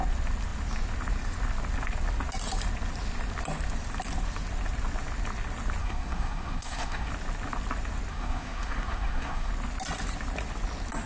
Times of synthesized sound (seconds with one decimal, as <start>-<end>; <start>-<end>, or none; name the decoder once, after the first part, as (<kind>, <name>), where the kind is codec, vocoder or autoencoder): 5.8-7.1 (codec, SNAC); 8.1-9.5